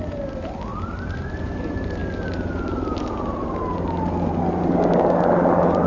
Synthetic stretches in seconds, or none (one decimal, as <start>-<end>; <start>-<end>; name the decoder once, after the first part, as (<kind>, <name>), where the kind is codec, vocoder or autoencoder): 0.7-1.3 (vocoder, BigVGAN v2)